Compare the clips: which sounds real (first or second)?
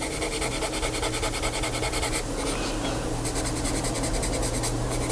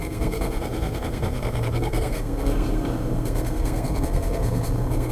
first